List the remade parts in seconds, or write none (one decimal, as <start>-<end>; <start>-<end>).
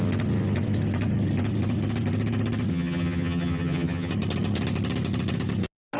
2.7-4.1